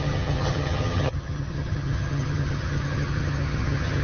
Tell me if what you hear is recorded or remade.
remade